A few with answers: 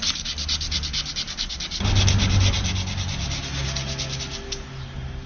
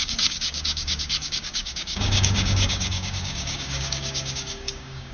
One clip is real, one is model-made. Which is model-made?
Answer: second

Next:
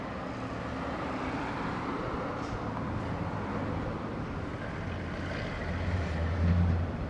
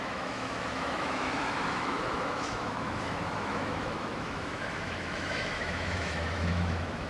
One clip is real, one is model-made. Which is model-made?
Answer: second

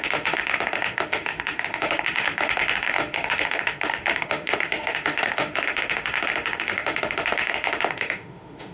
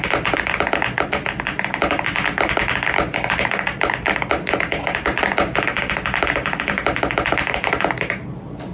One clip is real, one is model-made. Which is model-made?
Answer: first